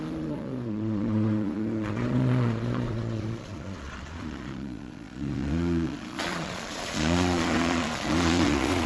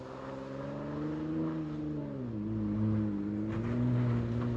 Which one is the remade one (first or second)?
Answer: first